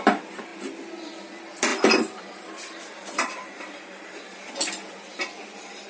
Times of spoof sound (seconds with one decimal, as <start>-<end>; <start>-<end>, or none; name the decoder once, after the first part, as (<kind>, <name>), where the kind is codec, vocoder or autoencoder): 0.0-0.5 (vocoder, BigVGAN v2); 1.2-1.7; 2.2-5.9